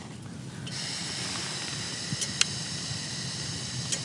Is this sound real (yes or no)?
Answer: yes